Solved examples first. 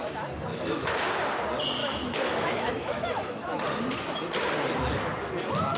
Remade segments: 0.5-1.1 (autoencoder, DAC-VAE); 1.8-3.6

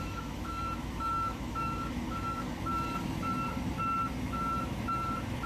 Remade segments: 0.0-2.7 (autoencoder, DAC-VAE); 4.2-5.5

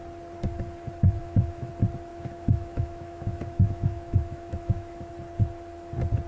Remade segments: 1.2-1.7 (autoencoder, DAC-VAE); 2.1-5.1